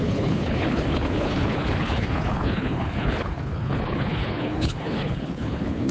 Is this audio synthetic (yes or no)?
yes